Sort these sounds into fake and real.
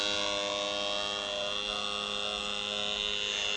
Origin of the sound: real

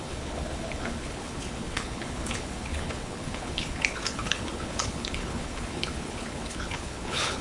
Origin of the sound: fake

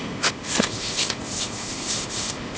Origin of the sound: fake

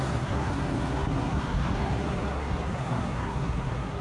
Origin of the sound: fake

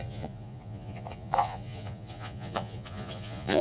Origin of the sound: fake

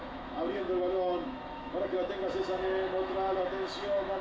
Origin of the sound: fake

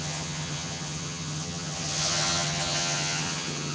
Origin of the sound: fake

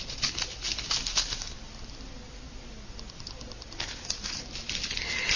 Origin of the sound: real